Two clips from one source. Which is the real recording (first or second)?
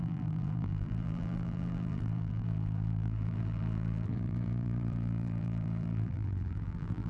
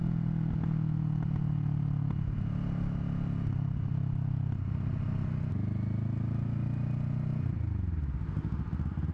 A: second